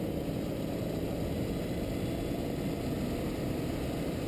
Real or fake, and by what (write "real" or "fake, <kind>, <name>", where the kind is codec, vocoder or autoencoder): real